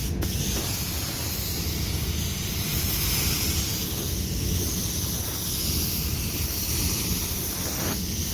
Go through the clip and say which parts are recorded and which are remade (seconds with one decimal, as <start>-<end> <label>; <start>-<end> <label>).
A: 0.0-8.3 recorded